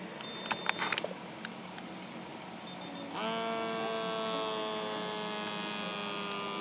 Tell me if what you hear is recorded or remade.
recorded